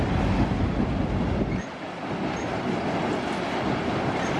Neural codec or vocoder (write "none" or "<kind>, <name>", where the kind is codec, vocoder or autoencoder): none